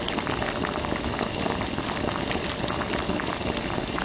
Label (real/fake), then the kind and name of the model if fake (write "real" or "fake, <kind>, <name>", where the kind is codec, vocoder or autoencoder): real